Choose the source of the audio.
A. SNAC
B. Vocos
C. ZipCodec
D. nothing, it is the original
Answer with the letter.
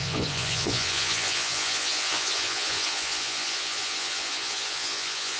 B